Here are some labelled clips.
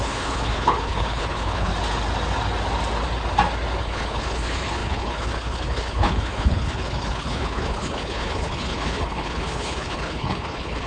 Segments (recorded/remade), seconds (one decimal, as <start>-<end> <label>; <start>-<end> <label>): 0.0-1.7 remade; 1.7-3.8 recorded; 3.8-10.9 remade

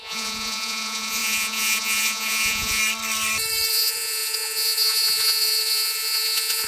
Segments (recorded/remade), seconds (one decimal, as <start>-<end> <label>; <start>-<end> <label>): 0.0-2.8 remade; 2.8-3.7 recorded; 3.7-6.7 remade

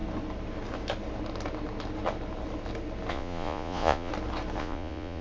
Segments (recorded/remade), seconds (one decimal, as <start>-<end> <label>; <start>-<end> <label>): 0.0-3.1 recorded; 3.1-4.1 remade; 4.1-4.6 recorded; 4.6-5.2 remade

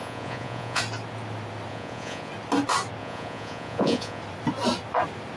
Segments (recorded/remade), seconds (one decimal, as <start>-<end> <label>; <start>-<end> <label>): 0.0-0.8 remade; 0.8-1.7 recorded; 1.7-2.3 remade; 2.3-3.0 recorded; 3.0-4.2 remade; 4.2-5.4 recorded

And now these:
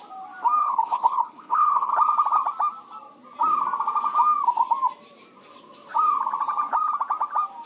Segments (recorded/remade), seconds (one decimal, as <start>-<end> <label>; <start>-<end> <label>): 0.0-0.6 recorded; 0.6-1.9 remade; 1.9-7.7 recorded

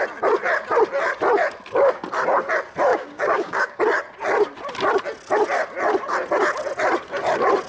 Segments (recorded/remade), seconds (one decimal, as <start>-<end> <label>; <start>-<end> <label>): 0.0-2.9 recorded; 2.9-3.8 remade; 3.8-7.7 recorded

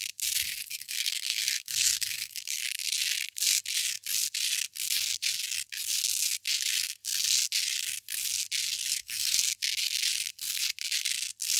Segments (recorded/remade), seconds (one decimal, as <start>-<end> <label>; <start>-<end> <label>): 0.0-0.7 recorded; 0.7-2.6 remade; 2.6-8.9 recorded; 8.9-9.4 remade; 9.4-11.6 recorded

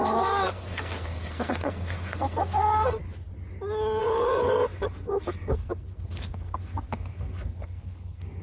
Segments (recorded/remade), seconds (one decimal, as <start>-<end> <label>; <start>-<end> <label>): 0.0-3.0 remade; 3.0-4.0 recorded; 4.0-8.4 remade